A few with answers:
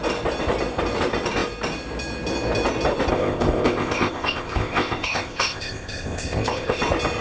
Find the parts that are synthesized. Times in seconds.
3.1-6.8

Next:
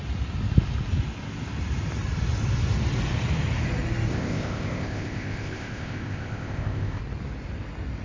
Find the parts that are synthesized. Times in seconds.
4.1-7.0

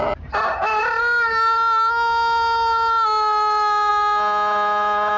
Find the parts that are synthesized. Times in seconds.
none